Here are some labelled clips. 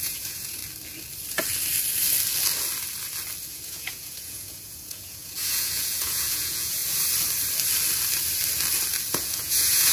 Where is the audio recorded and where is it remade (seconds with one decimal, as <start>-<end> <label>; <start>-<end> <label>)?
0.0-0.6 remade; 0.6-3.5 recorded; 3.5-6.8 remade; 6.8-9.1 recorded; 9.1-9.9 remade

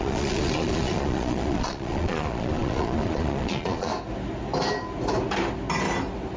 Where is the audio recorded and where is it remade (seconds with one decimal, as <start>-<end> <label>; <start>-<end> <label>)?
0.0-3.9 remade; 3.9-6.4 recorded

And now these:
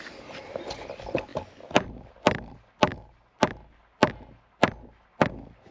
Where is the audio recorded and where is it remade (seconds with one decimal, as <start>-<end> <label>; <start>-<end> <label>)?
0.0-5.7 recorded

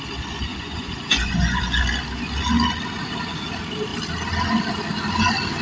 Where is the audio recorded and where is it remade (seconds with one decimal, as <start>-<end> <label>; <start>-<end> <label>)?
0.0-0.5 recorded; 0.5-1.8 remade; 1.8-5.6 recorded

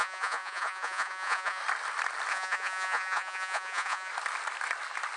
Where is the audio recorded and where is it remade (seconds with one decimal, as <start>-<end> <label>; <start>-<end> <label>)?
0.0-1.6 remade; 1.6-2.3 recorded; 2.3-4.1 remade; 4.1-5.2 recorded

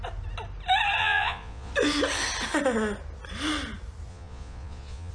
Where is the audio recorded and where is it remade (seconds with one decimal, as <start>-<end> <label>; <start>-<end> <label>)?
0.0-1.0 recorded; 1.0-1.7 remade; 1.7-4.1 recorded; 4.1-5.1 remade

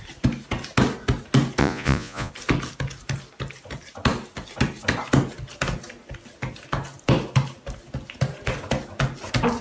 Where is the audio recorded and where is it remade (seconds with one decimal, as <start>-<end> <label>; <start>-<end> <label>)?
0.0-1.6 recorded; 1.6-2.3 remade; 2.3-9.6 recorded

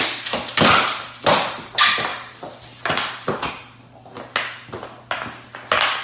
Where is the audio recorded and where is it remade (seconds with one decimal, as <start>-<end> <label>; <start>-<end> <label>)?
0.0-6.0 recorded